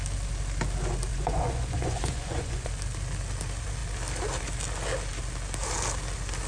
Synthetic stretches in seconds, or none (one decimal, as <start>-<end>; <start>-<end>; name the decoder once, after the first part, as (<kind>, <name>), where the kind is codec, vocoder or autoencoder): 1.1-2.7 (vocoder, Vocos)